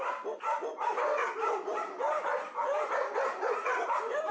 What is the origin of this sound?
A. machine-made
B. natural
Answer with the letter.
B